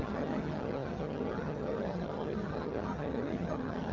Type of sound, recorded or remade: remade